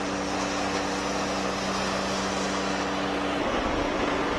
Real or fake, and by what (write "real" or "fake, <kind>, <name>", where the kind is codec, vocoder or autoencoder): real